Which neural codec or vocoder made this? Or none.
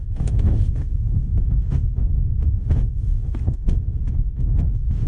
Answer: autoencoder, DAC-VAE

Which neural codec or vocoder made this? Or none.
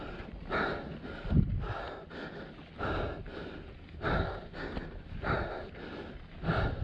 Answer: none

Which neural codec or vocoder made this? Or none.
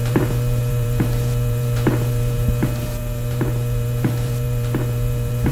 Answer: vocoder, BigVGAN v2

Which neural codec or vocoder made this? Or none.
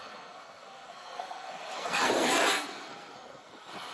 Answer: codec, SNAC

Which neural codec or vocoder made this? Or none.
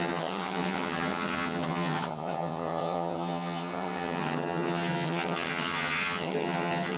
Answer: vocoder, HiFi-GAN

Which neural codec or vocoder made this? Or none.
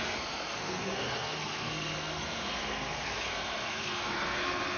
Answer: codec, SNAC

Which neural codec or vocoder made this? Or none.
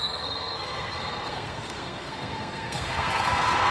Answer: codec, SNAC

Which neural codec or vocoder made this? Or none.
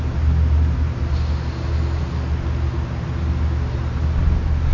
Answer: none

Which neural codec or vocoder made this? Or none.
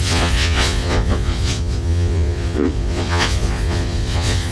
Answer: vocoder, Vocos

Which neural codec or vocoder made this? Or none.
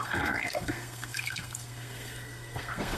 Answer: codec, SNAC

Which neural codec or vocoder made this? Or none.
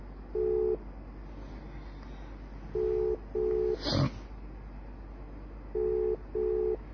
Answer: none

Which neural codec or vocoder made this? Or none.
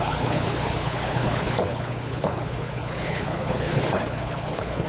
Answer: codec, HILCodec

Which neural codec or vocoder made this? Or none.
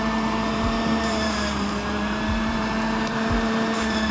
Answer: vocoder, BigVGAN v2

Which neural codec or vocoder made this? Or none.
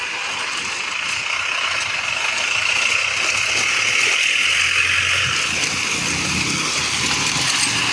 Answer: none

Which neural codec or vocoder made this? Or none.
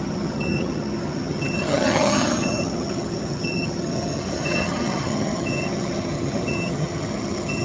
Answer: vocoder, HiFi-GAN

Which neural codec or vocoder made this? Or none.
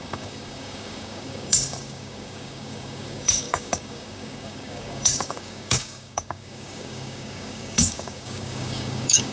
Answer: codec, DAC